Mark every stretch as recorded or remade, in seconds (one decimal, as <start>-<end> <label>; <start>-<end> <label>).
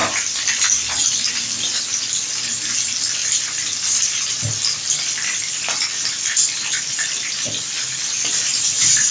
0.0-9.1 recorded